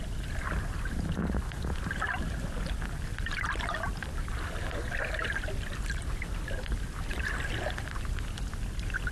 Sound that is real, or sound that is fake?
real